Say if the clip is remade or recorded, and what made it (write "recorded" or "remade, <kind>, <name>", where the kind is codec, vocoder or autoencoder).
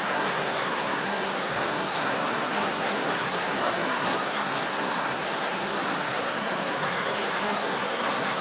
remade, codec, SNAC